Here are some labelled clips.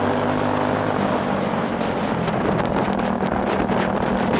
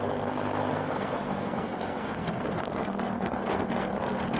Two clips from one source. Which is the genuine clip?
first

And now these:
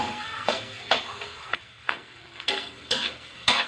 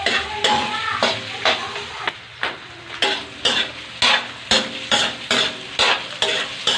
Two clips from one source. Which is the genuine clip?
second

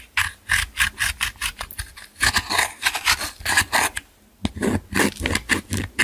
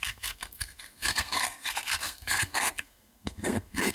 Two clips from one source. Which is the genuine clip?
first